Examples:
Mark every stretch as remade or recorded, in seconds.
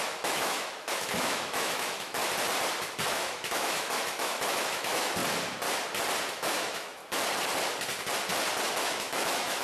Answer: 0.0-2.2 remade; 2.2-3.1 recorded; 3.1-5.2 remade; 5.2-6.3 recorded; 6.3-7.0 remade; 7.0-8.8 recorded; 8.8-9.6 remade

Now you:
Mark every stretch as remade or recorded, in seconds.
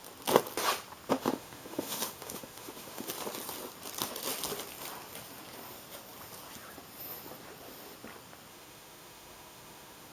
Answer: 0.0-1.1 recorded; 1.1-3.1 remade; 3.1-8.5 recorded; 8.5-10.1 remade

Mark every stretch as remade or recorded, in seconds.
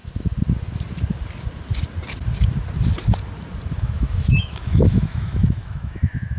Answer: 0.0-3.8 recorded; 3.8-6.4 remade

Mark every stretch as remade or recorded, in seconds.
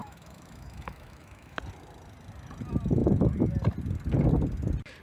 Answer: 0.0-1.6 remade; 1.6-5.0 recorded